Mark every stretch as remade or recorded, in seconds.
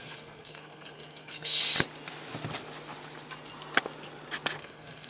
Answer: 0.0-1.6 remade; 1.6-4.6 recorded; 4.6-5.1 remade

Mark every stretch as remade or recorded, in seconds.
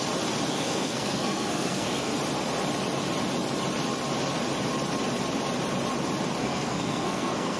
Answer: 0.0-0.5 recorded; 0.5-2.1 remade; 2.1-6.4 recorded; 6.4-7.6 remade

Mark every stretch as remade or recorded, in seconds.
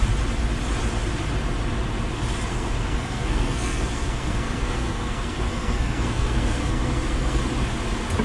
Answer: 0.0-2.5 recorded; 2.5-7.4 remade; 7.4-8.2 recorded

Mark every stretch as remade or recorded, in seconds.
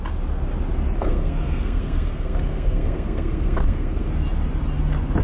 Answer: 0.0-1.0 recorded; 1.0-4.1 remade; 4.1-5.2 recorded